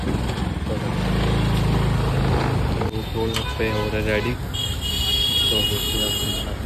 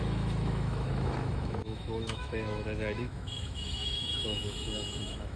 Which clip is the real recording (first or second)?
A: first